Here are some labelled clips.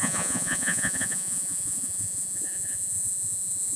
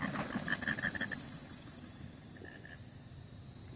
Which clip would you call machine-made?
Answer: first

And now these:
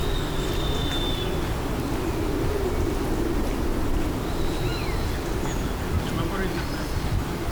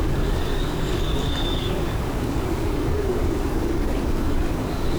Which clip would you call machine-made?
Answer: second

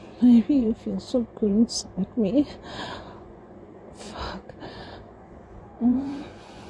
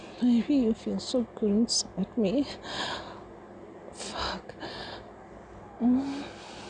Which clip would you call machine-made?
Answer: first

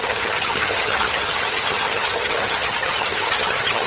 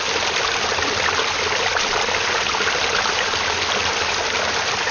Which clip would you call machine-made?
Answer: first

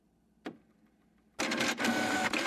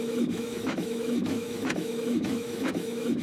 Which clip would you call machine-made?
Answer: second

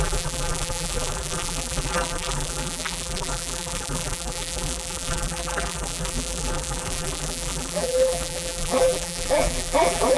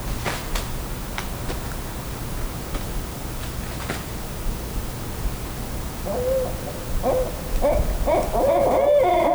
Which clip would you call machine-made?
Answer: first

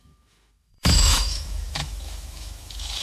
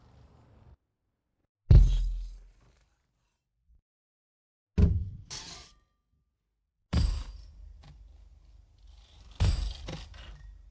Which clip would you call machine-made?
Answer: first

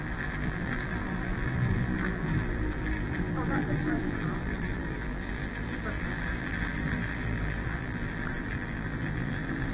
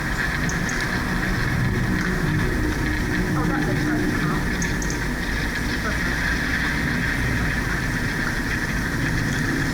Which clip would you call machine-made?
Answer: first